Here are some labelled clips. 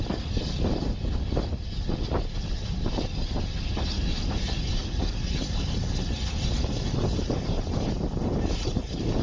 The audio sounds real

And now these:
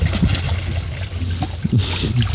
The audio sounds real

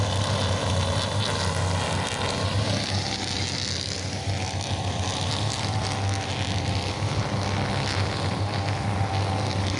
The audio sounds real